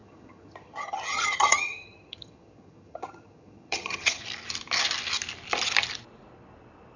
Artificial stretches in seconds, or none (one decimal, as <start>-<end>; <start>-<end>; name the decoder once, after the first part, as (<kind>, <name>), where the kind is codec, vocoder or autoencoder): 0.0-4.2 (vocoder, HiFi-GAN)